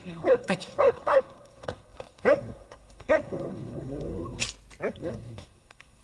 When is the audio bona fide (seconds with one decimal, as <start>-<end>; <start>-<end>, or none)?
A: 4.4-4.9